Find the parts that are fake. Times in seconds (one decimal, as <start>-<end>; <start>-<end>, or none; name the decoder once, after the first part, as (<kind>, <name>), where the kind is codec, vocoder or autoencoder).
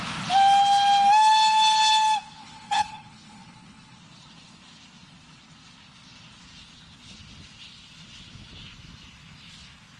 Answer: 2.4-4.0 (codec, HILCodec)